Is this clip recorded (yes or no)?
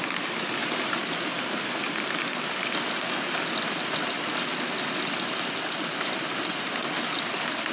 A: yes